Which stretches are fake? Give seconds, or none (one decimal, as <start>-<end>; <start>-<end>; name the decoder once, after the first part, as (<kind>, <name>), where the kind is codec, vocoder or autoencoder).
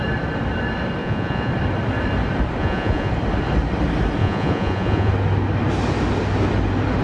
1.0-1.5 (vocoder, Vocos); 2.6-3.1; 4.2-5.1